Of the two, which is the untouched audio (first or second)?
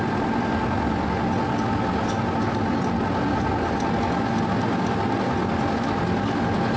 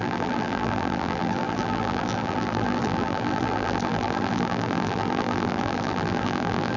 first